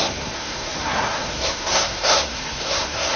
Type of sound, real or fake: fake